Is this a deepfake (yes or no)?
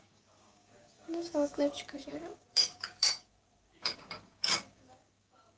yes